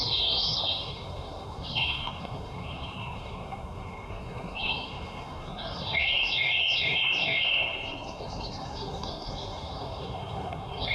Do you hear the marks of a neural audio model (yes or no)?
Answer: yes